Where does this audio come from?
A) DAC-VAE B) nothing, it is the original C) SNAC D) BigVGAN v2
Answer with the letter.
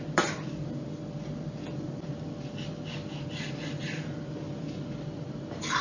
B